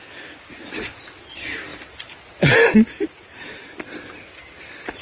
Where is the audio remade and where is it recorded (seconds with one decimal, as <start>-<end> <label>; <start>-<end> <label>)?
0.0-5.0 recorded